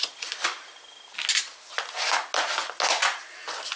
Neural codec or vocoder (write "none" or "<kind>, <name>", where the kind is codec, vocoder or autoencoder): none